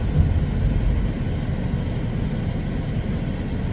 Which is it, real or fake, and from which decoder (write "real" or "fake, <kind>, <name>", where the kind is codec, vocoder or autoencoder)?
real